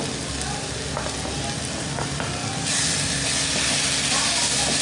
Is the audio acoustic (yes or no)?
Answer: yes